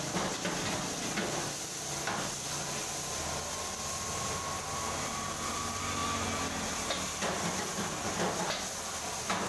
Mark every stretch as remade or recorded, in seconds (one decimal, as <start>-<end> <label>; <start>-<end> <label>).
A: 0.0-9.5 recorded